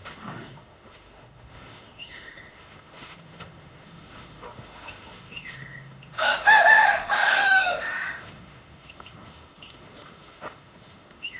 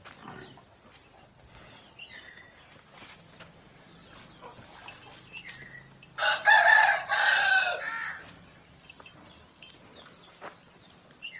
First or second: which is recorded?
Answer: second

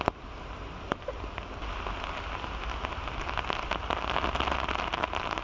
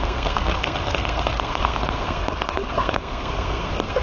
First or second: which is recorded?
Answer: first